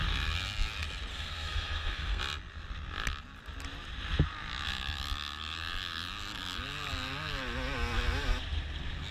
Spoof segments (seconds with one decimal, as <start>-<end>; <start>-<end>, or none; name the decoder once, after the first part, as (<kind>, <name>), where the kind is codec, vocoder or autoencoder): 1.1-2.2 (codec, SNAC)